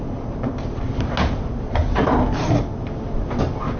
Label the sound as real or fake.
real